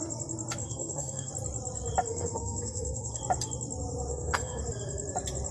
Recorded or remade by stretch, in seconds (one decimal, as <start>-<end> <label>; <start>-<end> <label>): 0.0-0.6 recorded; 0.6-1.3 remade; 1.3-2.1 recorded; 2.1-3.2 remade; 3.2-4.1 recorded; 4.1-4.6 remade; 4.6-5.5 recorded